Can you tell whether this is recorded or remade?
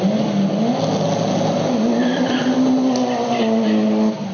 recorded